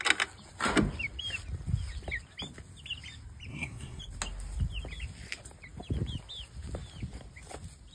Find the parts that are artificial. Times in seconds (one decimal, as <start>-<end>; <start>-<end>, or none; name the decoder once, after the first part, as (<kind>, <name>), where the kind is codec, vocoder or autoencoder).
3.5-4.0 (codec, SNAC)